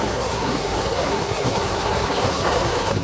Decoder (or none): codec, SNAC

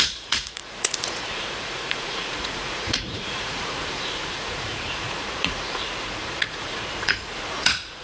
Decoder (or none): vocoder, Vocos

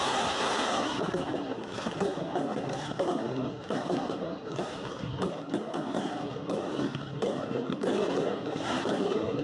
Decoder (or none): codec, SNAC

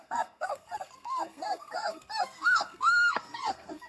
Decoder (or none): codec, SNAC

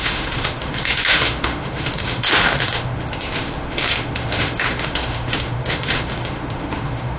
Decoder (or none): autoencoder, DAC-VAE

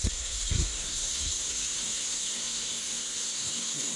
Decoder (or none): codec, SNAC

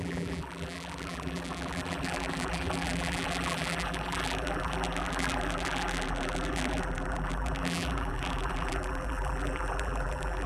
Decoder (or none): vocoder, BigVGAN v2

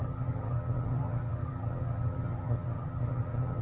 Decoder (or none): vocoder, HiFi-GAN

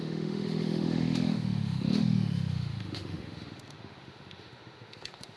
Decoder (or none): autoencoder, DAC-VAE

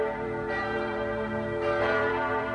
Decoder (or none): vocoder, BigVGAN v2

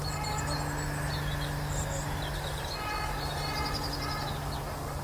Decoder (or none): none